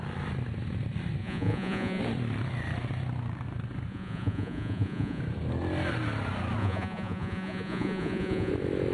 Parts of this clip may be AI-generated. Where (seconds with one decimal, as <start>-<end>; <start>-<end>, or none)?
1.2-2.0; 3.9-5.2; 6.6-8.5